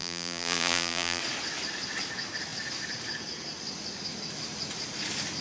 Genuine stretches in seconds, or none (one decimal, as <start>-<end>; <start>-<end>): 1.2-5.4